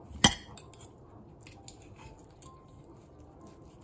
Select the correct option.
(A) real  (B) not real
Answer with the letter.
A